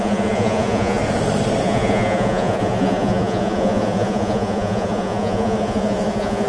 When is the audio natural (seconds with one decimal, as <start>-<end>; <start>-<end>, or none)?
1.0-1.6